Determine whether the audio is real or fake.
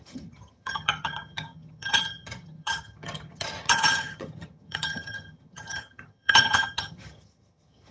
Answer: fake